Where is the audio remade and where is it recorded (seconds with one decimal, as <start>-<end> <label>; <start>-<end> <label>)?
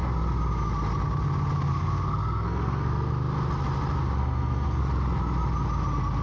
0.0-1.7 recorded; 1.7-3.1 remade; 3.1-4.2 recorded; 4.2-4.8 remade; 4.8-6.2 recorded